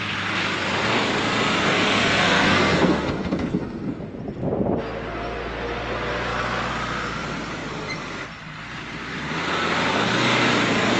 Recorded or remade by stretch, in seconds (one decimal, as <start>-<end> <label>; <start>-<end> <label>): 0.0-1.6 recorded; 1.6-4.0 remade; 4.0-11.0 recorded